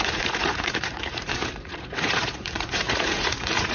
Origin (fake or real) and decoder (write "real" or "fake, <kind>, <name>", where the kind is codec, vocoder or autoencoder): fake, vocoder, Vocos